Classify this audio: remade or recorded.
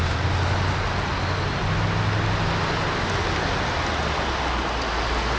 recorded